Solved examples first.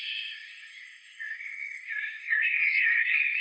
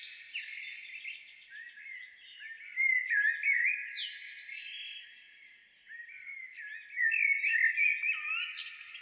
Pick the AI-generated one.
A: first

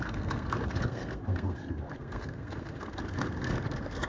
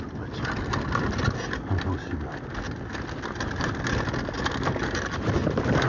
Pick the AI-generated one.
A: first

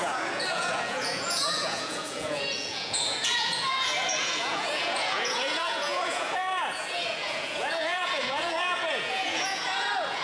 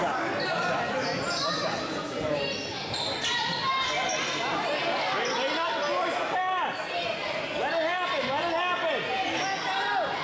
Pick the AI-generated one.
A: first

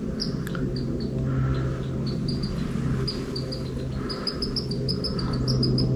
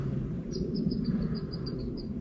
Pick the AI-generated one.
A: second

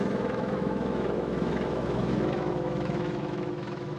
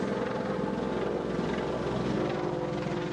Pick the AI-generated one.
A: first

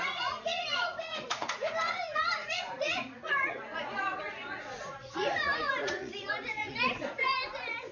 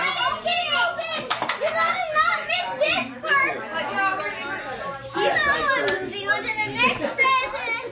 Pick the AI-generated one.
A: first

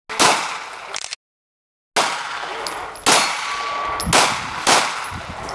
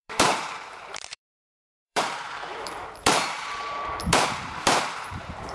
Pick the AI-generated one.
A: second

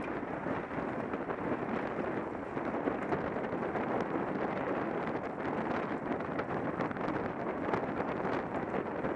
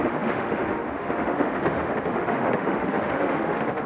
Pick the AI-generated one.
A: second